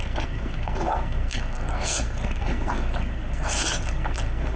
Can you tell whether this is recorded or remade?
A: remade